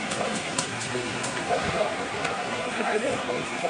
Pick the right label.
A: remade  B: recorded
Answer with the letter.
A